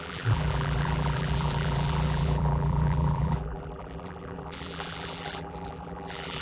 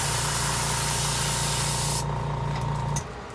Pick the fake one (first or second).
first